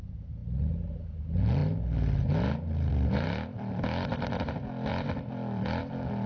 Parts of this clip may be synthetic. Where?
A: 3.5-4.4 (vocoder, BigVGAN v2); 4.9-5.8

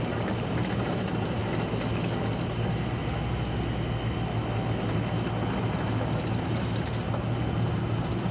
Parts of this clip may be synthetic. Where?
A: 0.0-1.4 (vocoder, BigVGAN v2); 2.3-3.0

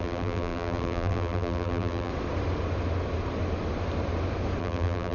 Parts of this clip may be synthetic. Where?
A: 0.0-2.1 (vocoder, BigVGAN v2); 4.6-5.1

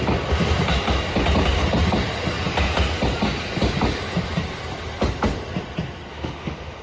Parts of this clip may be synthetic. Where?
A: 6.1-6.8 (autoencoder, DAC-VAE)

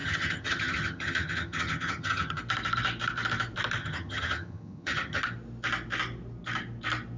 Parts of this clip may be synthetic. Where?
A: 0.0-2.4 (vocoder, HiFi-GAN); 3.8-5.2

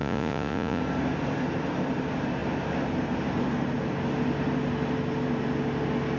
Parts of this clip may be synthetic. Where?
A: 0.0-0.8 (vocoder, Vocos)